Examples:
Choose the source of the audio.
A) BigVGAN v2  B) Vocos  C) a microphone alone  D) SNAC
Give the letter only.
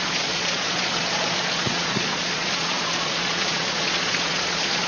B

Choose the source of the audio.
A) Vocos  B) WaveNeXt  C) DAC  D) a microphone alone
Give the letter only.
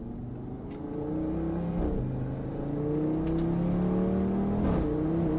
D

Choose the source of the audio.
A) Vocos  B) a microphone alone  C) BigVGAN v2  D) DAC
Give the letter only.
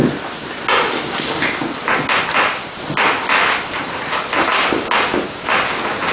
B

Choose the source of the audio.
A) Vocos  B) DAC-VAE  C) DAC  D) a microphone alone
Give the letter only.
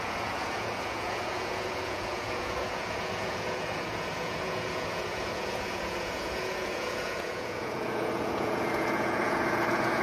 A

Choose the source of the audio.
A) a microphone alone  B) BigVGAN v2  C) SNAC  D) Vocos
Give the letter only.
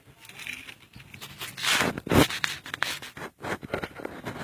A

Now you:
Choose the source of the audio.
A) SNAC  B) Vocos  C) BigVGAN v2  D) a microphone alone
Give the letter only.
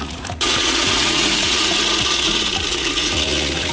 B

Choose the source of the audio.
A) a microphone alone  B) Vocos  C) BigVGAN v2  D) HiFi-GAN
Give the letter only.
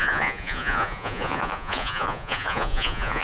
B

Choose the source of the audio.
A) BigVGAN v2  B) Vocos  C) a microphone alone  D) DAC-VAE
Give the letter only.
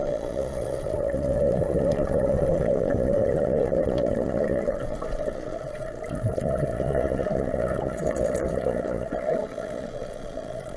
B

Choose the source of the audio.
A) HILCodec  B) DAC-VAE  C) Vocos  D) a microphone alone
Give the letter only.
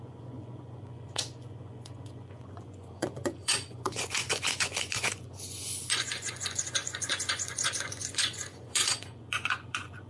C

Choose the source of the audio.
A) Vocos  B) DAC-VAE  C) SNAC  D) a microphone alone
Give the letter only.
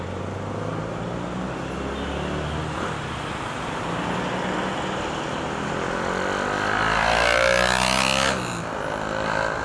D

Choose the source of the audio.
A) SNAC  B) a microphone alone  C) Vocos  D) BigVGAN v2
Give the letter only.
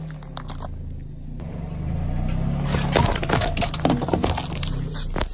B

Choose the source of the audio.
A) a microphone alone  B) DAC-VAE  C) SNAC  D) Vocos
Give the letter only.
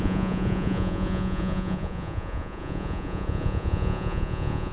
D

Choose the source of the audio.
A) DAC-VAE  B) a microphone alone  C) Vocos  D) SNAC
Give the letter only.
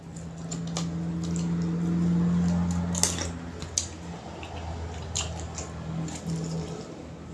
B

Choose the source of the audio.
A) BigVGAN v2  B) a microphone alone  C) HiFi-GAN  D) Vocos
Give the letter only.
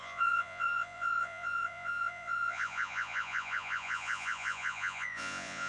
D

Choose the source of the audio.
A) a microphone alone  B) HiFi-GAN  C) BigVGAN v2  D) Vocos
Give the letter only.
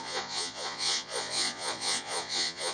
D